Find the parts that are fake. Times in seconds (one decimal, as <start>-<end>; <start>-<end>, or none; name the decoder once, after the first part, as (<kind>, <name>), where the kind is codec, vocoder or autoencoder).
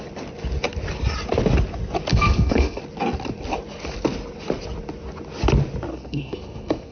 2.1-2.8 (codec, SNAC); 5.9-6.9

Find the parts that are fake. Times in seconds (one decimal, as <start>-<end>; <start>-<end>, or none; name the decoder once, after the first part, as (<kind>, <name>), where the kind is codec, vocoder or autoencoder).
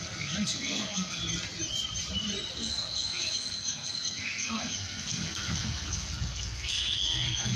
0.0-1.2 (codec, SNAC); 2.5-7.6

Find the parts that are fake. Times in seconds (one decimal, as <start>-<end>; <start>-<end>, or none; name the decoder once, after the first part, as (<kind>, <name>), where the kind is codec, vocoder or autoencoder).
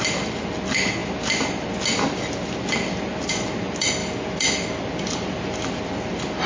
none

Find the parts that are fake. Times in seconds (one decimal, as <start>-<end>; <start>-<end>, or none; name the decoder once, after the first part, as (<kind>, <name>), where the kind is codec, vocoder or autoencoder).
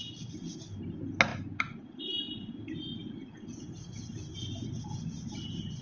none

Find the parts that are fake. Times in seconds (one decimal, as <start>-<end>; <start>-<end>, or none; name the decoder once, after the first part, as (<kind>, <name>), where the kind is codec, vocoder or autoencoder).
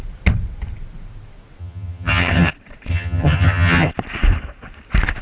1.6-2.5 (vocoder, HiFi-GAN); 2.9-3.9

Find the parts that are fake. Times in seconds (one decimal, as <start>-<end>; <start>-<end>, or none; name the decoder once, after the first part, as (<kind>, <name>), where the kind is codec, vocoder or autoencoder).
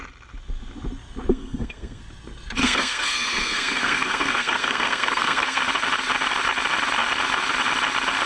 1.3-2.0 (codec, SNAC); 2.6-5.6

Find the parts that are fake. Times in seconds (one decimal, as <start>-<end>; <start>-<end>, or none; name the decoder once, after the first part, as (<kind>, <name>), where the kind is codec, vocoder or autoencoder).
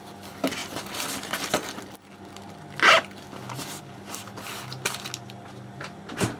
none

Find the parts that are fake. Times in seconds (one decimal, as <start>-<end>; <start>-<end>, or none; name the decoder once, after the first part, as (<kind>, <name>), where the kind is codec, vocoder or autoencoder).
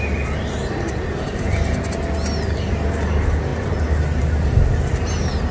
none